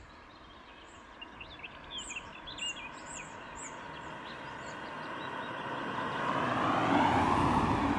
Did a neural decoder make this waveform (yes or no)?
no